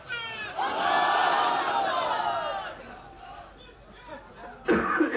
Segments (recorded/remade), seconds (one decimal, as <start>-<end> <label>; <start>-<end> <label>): 0.0-5.2 recorded